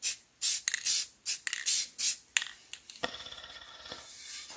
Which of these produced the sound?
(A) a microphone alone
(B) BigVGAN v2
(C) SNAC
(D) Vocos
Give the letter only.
A